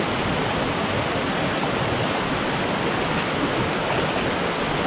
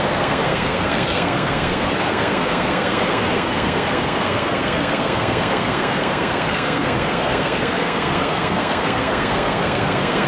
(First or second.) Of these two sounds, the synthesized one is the second